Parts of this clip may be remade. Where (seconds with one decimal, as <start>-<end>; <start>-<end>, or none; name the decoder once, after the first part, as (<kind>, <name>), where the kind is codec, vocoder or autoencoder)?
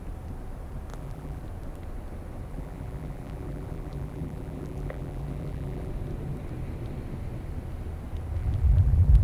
0.9-1.4 (vocoder, BigVGAN v2); 2.5-5.9; 8.4-9.2